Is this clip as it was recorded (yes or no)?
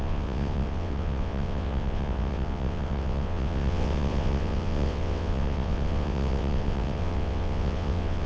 no